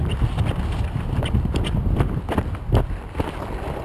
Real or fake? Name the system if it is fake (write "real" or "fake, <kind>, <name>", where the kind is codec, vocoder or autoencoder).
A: real